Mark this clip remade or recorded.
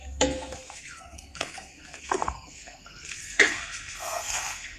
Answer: remade